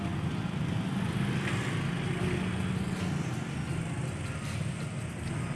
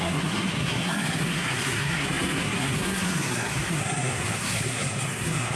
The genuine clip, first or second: first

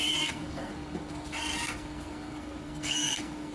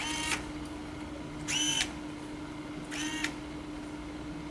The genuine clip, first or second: second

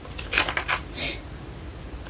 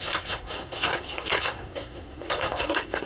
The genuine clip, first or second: first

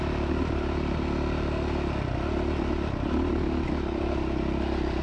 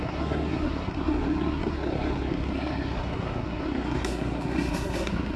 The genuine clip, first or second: first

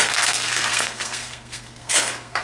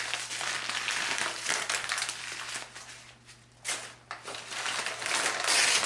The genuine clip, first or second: second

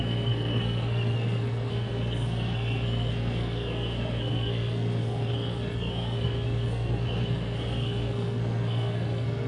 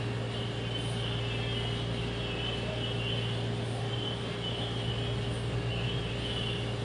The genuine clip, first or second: second